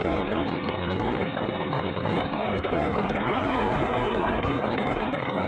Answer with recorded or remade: remade